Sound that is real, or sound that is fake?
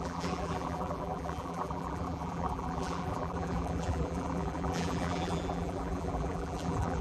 fake